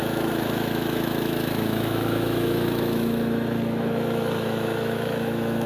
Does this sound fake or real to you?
fake